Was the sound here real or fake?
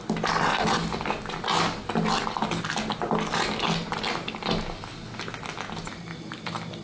real